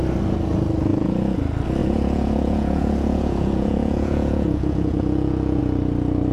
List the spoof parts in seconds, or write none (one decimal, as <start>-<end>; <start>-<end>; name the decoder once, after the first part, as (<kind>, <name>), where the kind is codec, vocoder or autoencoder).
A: 0.9-1.4 (vocoder, Vocos); 1.8-5.6